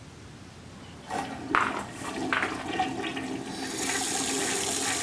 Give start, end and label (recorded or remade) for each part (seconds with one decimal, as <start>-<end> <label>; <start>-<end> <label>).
0.0-5.0 recorded